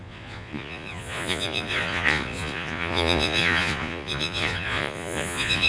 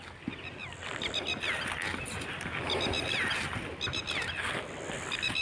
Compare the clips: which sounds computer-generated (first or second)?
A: first